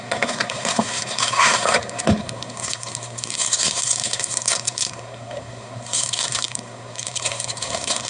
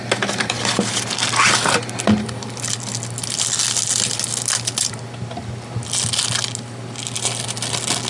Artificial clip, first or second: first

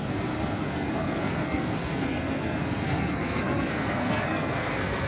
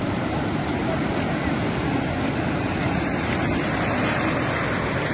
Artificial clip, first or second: first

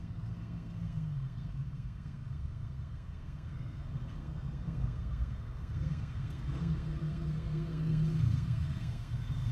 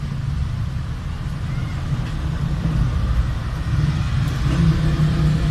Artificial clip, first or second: first